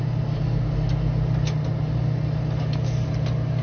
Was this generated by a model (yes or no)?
no